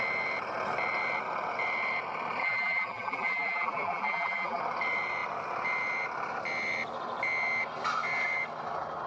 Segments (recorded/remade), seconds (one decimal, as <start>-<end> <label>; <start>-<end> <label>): 0.0-2.4 recorded; 2.4-4.6 remade; 4.6-9.1 recorded